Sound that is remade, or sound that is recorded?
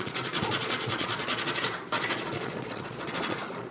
remade